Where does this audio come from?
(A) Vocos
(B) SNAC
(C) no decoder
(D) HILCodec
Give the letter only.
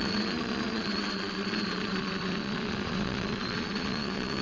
A